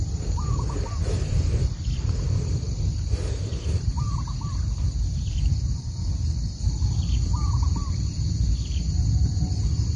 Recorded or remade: remade